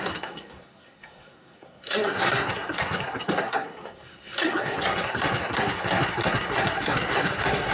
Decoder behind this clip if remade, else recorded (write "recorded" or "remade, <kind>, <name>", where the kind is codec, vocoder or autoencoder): remade, codec, SNAC